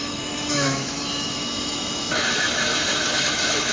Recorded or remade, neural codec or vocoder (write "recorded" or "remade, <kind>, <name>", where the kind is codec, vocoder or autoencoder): remade, autoencoder, DAC-VAE